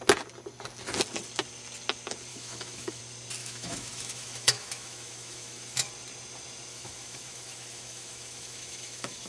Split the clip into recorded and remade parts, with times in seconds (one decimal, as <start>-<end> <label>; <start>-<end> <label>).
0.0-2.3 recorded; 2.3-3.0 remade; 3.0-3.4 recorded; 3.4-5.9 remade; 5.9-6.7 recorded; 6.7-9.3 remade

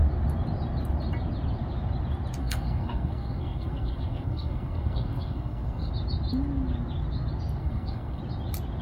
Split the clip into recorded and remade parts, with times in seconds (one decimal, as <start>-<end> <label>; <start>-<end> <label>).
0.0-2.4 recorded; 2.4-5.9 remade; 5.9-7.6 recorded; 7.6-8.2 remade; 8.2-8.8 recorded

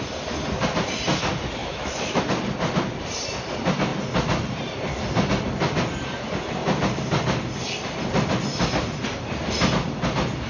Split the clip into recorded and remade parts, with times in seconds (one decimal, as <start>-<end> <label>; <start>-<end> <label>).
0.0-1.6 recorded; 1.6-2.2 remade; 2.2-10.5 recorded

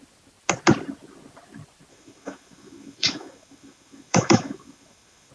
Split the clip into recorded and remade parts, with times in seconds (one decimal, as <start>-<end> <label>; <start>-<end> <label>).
0.0-1.9 recorded; 1.9-5.3 remade

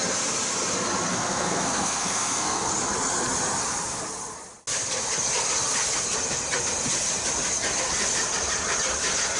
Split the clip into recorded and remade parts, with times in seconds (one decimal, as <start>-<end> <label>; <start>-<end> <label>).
0.0-1.1 recorded; 1.1-2.7 remade; 2.7-9.4 recorded